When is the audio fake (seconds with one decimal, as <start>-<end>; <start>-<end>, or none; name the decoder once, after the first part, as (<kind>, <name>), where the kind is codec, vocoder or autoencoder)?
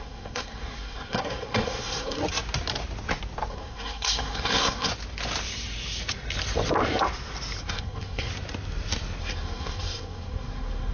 0.0-2.2 (codec, SNAC); 3.5-4.9; 7.6-8.3; 9.2-10.9